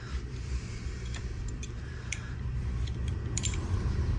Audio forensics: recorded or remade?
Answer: remade